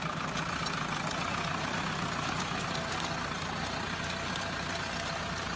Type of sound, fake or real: real